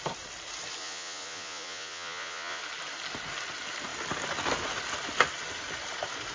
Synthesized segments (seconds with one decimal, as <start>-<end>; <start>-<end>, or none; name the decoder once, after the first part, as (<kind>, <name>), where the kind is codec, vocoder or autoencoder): 0.8-2.6 (vocoder, Vocos)